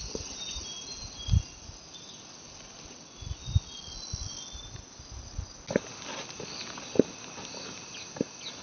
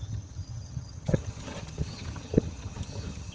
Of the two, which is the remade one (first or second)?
second